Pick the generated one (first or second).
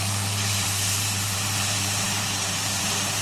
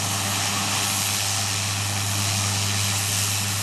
first